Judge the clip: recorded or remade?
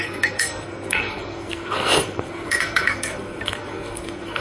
remade